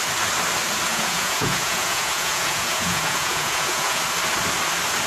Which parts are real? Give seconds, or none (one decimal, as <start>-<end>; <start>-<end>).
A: 0.0-0.9; 4.0-5.1